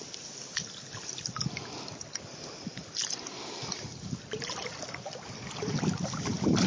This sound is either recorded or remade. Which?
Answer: recorded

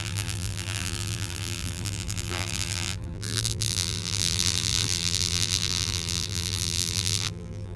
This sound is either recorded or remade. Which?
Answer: remade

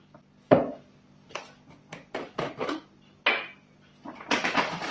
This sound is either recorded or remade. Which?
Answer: recorded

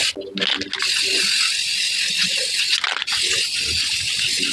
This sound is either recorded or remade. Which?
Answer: recorded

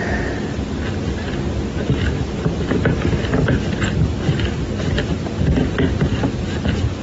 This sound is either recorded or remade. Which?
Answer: recorded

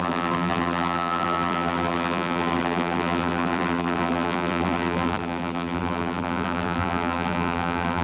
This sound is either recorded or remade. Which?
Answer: remade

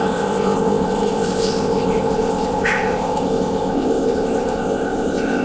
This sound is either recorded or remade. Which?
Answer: remade